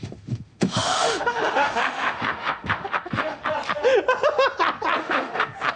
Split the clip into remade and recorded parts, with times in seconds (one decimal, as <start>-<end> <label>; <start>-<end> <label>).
0.0-3.4 remade; 3.4-5.0 recorded; 5.0-5.8 remade